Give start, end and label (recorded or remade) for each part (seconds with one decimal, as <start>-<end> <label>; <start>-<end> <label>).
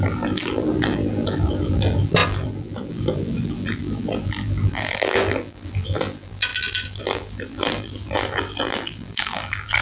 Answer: 0.0-9.8 remade